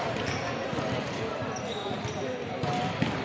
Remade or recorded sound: recorded